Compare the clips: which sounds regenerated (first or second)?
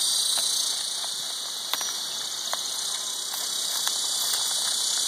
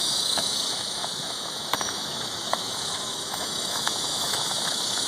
second